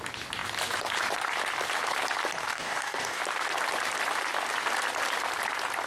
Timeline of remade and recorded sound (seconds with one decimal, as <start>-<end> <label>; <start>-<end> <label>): 0.0-2.4 recorded; 2.4-3.2 remade; 3.2-5.9 recorded